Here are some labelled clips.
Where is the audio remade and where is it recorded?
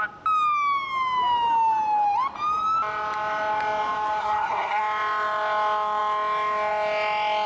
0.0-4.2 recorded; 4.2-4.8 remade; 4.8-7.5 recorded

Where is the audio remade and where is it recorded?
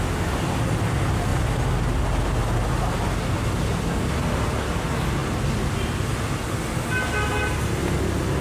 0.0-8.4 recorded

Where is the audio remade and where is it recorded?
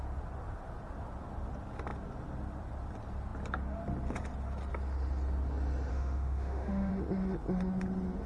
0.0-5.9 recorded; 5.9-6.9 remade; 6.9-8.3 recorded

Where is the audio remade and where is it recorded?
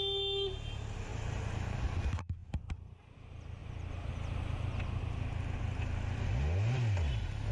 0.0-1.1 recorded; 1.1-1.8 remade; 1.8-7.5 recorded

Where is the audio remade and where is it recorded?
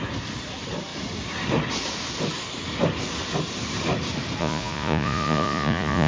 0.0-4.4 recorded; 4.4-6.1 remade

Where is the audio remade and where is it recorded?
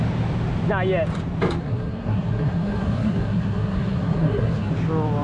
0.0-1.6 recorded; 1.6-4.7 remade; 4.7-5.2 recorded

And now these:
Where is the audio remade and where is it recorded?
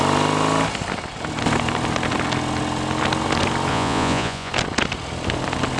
0.0-3.7 recorded; 3.7-4.5 remade; 4.5-5.8 recorded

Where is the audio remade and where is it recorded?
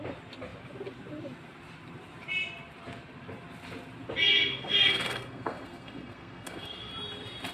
0.0-4.4 recorded; 4.4-6.9 remade; 6.9-7.5 recorded